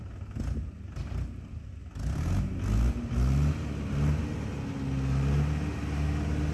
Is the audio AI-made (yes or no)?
no